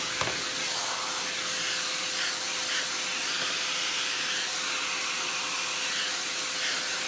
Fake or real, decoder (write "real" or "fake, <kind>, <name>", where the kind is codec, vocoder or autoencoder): real